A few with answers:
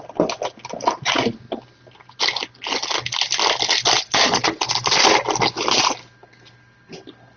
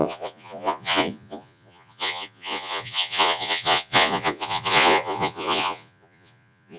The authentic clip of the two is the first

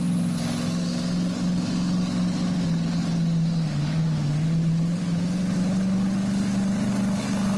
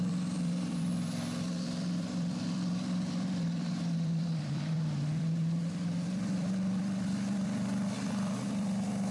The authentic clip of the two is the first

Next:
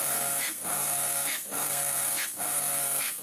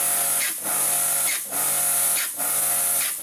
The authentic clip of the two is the second